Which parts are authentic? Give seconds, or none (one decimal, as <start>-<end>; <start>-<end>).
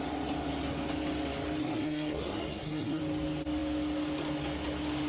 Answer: 0.0-1.6; 3.0-5.1